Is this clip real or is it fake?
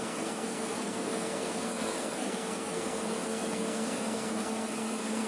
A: fake